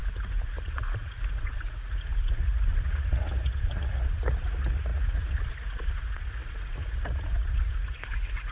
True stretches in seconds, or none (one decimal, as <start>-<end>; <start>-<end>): none